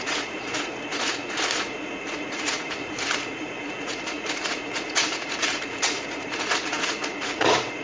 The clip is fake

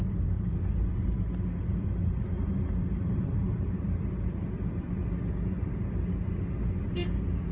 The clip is real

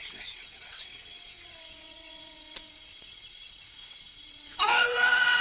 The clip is fake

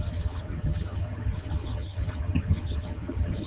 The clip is fake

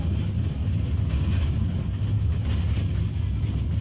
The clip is real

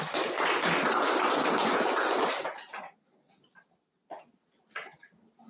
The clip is real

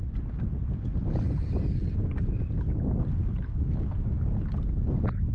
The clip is real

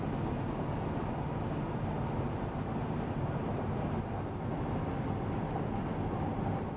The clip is real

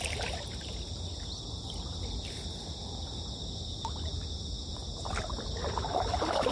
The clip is real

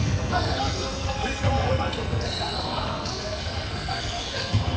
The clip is fake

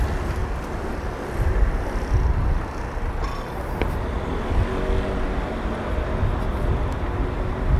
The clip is real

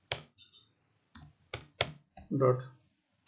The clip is real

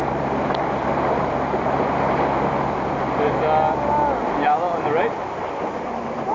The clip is real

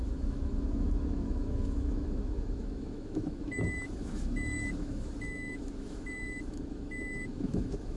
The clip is fake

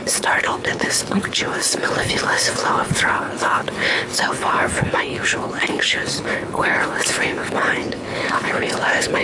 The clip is fake